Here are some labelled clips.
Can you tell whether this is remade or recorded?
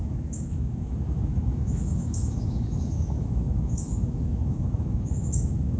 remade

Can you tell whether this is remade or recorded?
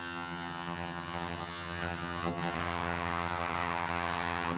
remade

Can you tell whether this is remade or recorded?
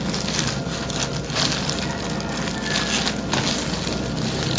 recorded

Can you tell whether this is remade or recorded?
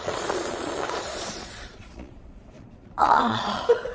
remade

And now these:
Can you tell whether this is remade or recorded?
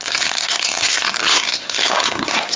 remade